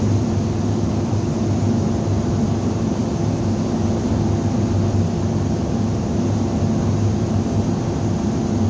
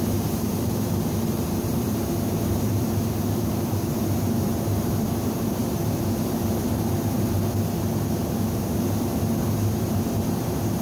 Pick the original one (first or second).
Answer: first